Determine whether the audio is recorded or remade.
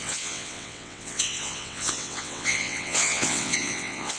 remade